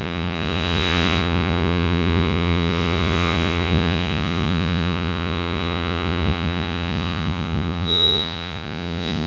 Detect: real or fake fake